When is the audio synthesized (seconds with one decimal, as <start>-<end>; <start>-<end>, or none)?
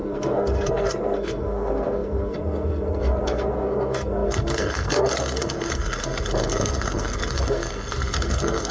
0.0-8.7